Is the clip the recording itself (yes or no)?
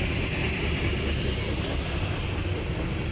yes